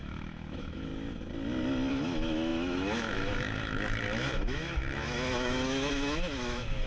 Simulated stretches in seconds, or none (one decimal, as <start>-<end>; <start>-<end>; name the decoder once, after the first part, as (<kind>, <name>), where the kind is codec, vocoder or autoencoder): 0.0-0.9 (autoencoder, DAC-VAE); 1.9-6.9